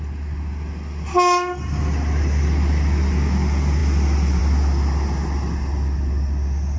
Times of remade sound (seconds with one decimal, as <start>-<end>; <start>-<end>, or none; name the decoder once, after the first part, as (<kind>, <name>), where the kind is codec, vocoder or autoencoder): none